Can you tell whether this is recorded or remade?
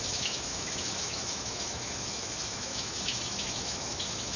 remade